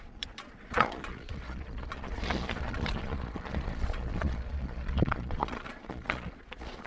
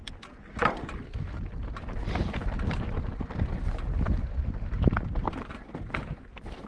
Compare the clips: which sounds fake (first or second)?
first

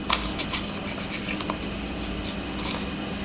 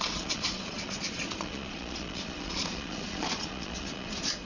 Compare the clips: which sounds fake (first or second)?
second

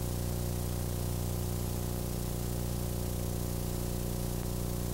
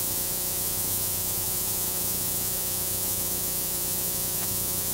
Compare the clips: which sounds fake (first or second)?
second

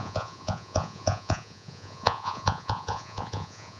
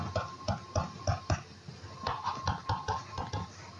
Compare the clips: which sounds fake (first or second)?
first